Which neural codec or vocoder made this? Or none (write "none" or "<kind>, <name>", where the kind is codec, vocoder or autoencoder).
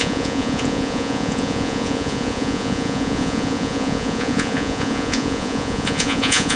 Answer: vocoder, Vocos